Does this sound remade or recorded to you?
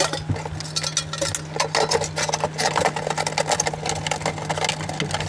recorded